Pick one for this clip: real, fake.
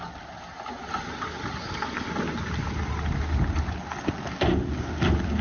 real